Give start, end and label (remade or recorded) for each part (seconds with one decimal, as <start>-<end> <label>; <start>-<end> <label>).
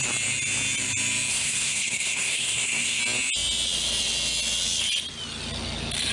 0.0-1.3 recorded; 1.3-3.0 remade; 3.0-6.1 recorded